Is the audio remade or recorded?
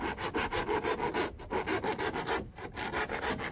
recorded